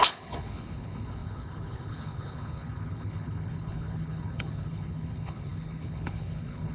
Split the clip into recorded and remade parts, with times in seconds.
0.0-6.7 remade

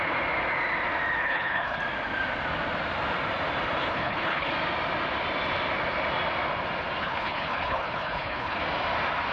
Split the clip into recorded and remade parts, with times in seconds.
0.0-1.2 recorded; 1.2-1.8 remade; 1.8-3.8 recorded; 3.8-4.5 remade; 4.5-7.0 recorded; 7.0-8.6 remade; 8.6-9.3 recorded

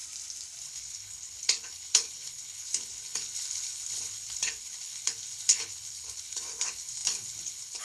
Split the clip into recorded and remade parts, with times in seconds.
0.0-0.6 recorded; 0.6-7.8 remade

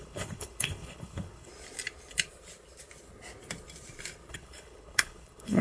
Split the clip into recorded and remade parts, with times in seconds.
0.0-1.5 remade; 1.5-4.3 recorded; 4.3-5.6 remade

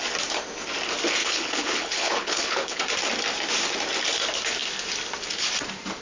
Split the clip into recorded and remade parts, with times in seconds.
0.0-1.2 recorded; 1.2-2.8 remade; 2.8-6.0 recorded

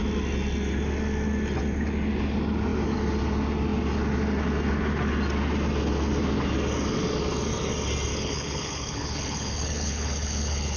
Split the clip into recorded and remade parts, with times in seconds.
0.0-8.1 recorded; 8.1-10.8 remade

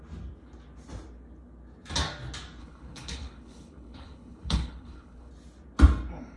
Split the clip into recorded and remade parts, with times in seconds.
0.0-2.6 recorded; 2.6-5.3 remade; 5.3-6.4 recorded

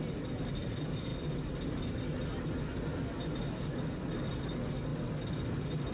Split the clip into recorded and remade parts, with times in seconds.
0.0-5.9 recorded